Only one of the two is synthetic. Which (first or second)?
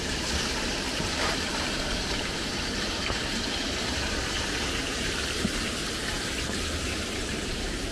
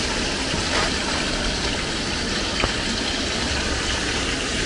first